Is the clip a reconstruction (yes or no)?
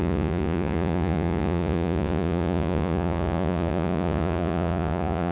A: yes